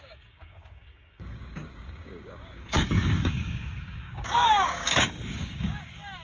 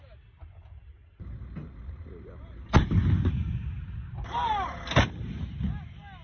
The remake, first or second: first